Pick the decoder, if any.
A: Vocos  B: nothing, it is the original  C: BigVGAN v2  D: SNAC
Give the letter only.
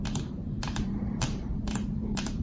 C